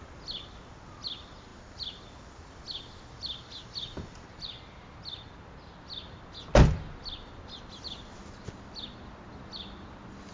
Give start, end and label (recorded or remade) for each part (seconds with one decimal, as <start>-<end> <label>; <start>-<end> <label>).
0.0-10.3 recorded

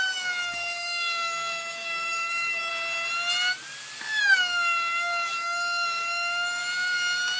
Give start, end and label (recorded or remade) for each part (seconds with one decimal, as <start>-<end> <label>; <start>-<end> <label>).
0.0-2.7 remade; 2.7-4.2 recorded; 4.2-6.6 remade; 6.6-7.4 recorded